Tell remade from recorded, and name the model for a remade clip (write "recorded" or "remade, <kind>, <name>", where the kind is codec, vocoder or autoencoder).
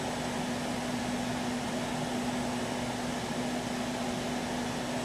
recorded